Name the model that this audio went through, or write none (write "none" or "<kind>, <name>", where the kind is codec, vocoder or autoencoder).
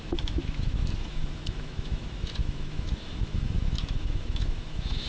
autoencoder, DAC-VAE